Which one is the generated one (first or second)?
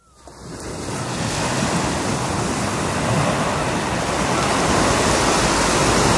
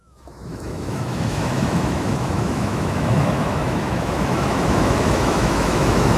second